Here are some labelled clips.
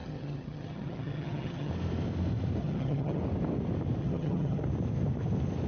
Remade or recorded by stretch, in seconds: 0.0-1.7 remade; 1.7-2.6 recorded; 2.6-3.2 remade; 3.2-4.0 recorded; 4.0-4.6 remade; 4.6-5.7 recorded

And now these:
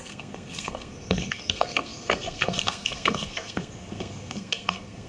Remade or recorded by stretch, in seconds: 0.0-5.1 remade